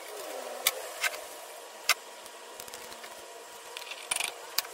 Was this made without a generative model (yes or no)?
yes